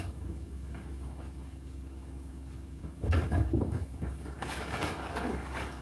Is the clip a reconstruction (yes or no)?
yes